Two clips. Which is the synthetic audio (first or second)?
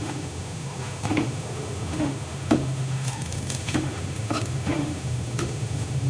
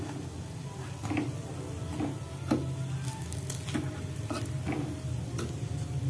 first